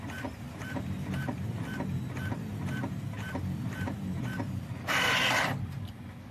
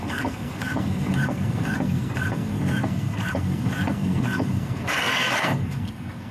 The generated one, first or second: second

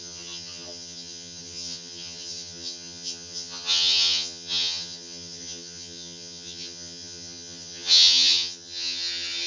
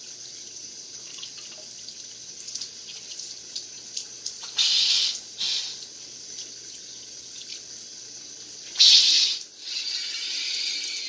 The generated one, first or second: first